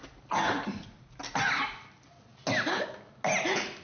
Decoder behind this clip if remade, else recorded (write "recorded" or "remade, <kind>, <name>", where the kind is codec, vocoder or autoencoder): recorded